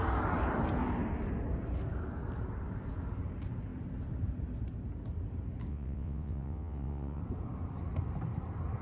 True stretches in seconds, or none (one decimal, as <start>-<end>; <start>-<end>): 0.0-5.7; 7.2-8.8